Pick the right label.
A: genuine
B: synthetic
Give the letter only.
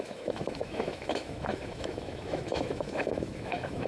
B